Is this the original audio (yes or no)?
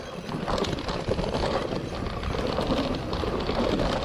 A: no